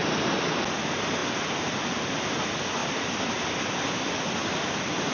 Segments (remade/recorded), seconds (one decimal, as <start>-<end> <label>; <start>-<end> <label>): 0.0-5.1 recorded